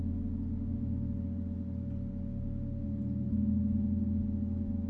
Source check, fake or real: real